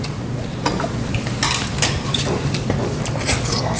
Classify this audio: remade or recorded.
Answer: recorded